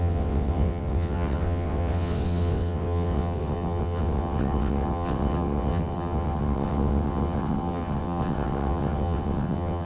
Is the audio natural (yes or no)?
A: no